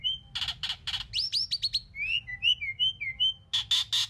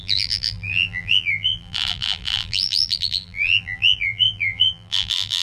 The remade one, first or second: second